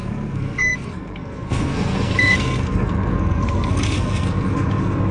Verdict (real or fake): fake